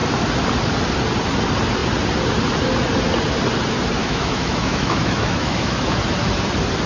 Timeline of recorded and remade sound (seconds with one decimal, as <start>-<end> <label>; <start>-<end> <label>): 0.0-4.0 recorded; 4.0-6.0 remade; 6.0-6.9 recorded